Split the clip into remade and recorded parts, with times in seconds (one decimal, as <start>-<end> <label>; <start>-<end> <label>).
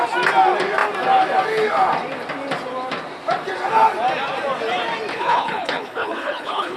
0.0-5.1 recorded; 5.1-6.8 remade